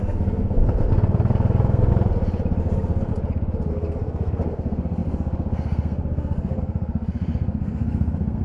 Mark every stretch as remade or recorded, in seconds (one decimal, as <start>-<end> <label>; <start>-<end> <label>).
0.0-1.9 remade; 1.9-2.6 recorded; 2.6-3.1 remade; 3.1-3.7 recorded; 3.7-8.4 remade